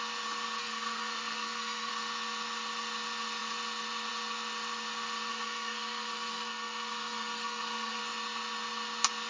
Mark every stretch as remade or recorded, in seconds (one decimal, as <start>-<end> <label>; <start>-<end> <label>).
0.0-0.6 recorded; 0.6-1.9 remade; 1.9-5.3 recorded; 5.3-8.0 remade; 8.0-9.3 recorded